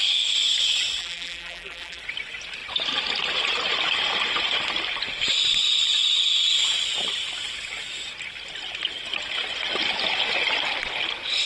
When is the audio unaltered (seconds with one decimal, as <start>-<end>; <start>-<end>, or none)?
0.0-1.0; 2.0-11.5